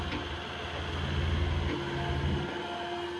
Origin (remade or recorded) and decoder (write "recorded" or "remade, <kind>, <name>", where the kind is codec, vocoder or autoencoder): recorded